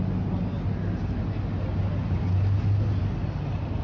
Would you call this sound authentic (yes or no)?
yes